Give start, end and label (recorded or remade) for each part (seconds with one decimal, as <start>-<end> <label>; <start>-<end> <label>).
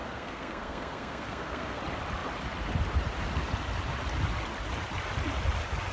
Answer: 0.0-1.8 remade; 1.8-5.9 recorded